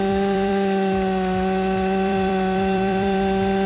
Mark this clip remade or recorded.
remade